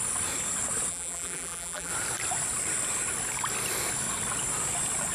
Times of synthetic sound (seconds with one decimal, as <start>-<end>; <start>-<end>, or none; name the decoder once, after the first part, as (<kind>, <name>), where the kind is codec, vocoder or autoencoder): 0.9-1.9 (vocoder, BigVGAN v2)